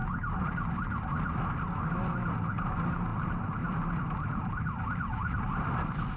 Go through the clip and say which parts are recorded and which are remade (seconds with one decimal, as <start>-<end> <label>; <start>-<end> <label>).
0.0-3.1 recorded; 3.1-5.4 remade; 5.4-6.2 recorded

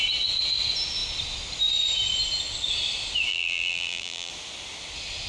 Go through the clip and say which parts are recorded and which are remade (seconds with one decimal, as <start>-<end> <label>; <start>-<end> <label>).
0.0-3.3 recorded; 3.3-4.3 remade; 4.3-5.3 recorded